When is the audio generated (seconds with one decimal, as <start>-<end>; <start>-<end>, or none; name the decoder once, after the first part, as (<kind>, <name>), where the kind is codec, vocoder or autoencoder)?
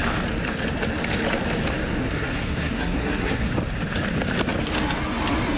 2.0-3.5 (codec, SNAC)